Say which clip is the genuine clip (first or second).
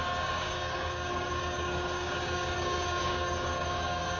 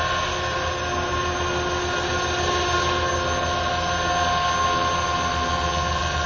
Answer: second